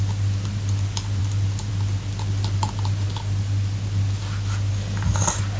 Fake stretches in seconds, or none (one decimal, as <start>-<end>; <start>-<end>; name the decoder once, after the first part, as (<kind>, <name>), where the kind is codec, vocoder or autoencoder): none